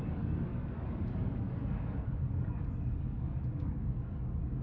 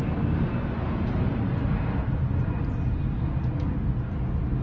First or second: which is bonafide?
second